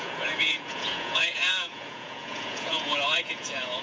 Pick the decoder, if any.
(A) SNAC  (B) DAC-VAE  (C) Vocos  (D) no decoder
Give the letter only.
C